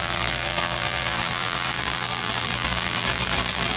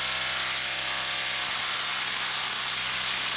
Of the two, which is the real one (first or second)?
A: second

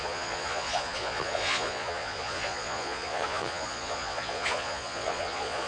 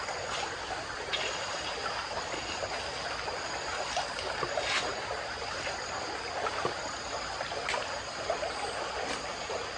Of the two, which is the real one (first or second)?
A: second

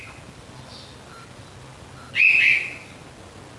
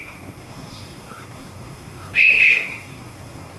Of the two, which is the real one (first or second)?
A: first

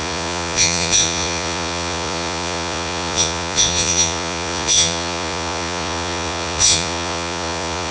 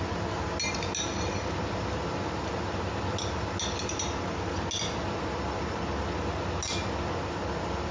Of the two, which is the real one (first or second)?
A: second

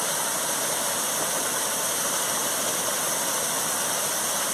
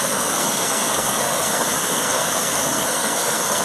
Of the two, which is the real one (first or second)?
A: first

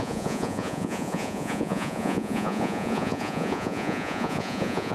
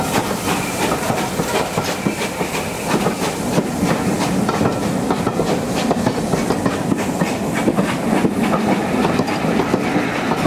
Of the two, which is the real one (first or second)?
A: second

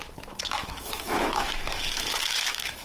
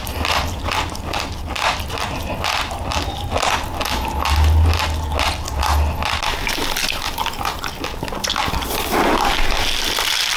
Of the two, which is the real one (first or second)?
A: second